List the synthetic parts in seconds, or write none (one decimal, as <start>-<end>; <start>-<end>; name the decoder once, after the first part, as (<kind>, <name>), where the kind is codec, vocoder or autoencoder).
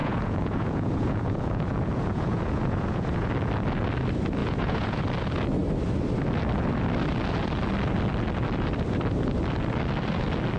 0.0-3.3 (vocoder, Vocos); 4.4-5.0